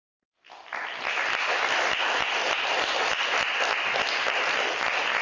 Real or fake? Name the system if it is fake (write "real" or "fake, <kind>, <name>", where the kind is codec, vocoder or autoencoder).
real